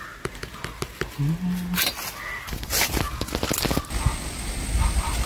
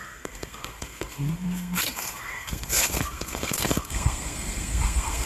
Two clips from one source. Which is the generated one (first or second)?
second